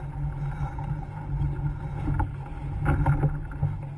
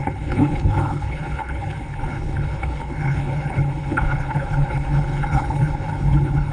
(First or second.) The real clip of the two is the first